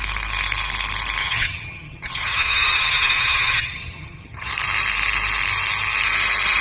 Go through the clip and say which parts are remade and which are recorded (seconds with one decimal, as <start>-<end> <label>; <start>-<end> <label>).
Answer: 0.0-1.2 recorded; 1.2-4.5 remade; 4.5-6.6 recorded